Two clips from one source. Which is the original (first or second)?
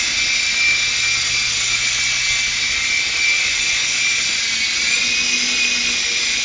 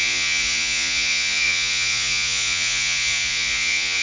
first